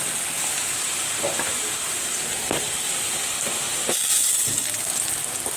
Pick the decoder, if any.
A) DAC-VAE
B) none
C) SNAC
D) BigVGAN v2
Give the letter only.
B